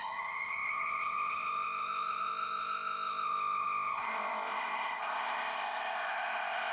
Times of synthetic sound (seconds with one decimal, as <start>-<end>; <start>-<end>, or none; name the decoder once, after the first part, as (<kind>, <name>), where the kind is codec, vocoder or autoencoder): 0.0-6.7 (codec, ZipCodec)